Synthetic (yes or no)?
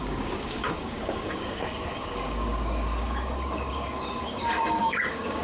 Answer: yes